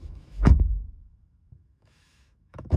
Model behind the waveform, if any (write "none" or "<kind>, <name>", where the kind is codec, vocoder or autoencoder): autoencoder, DAC-VAE